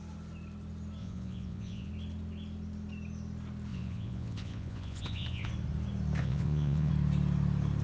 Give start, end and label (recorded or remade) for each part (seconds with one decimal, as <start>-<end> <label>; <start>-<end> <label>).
0.0-1.0 recorded; 1.0-1.9 remade; 1.9-3.7 recorded; 3.7-5.5 remade; 5.5-6.2 recorded; 6.2-6.9 remade; 6.9-7.8 recorded